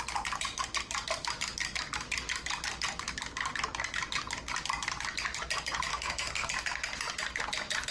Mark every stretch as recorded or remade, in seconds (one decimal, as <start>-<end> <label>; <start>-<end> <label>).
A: 0.0-5.9 recorded; 5.9-6.5 remade; 6.5-7.9 recorded

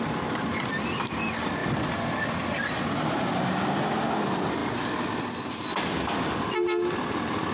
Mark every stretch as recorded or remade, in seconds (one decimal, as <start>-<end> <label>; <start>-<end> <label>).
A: 0.0-1.6 recorded; 1.6-2.1 remade; 2.1-4.6 recorded; 4.6-5.1 remade; 5.1-7.5 recorded